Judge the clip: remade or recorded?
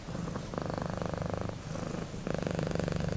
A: recorded